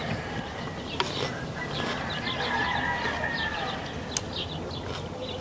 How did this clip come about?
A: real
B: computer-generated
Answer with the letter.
A